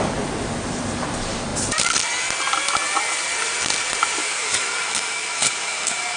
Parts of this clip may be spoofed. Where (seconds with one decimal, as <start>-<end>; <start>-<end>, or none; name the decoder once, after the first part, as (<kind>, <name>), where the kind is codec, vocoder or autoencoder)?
4.2-6.2 (codec, DAC)